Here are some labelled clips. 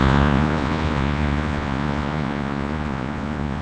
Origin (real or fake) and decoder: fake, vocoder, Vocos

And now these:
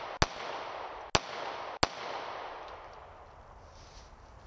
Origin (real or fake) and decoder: real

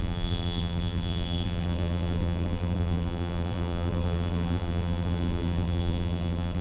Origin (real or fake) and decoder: fake, vocoder, BigVGAN v2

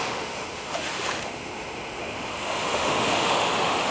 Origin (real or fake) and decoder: fake, autoencoder, DAC-VAE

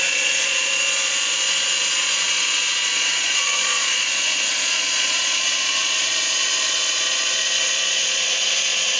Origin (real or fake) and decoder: fake, vocoder, Vocos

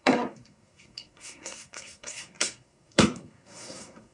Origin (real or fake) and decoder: fake, codec, SNAC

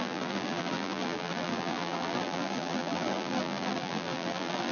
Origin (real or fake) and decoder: fake, vocoder, BigVGAN v2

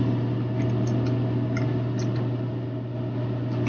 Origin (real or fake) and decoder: real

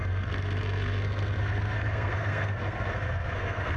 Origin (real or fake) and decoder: fake, codec, SNAC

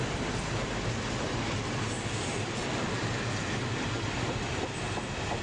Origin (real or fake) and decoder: real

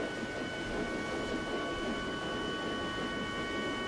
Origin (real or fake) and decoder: real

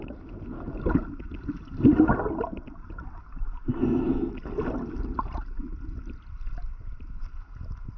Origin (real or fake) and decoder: real